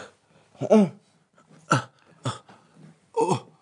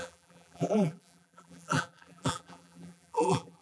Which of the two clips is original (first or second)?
first